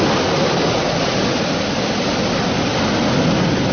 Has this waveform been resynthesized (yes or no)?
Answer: no